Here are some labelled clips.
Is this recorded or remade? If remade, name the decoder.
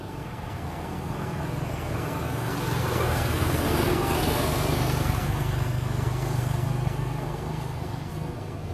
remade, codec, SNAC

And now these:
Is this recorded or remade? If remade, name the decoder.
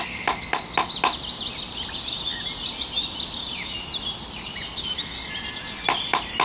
recorded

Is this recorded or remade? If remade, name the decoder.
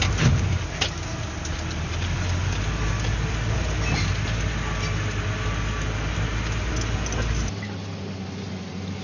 recorded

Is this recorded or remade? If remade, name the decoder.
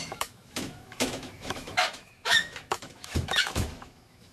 remade, autoencoder, DAC-VAE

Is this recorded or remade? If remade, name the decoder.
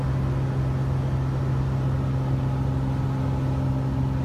recorded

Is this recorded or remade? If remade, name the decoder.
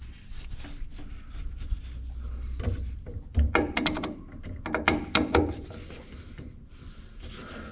recorded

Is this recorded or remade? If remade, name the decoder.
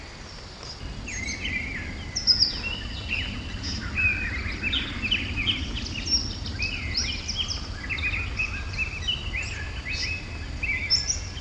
recorded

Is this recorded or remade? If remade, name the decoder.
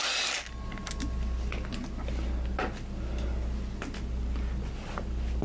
recorded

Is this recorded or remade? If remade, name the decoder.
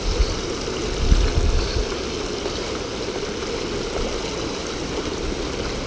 recorded